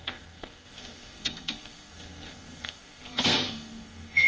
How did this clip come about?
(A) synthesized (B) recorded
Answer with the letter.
A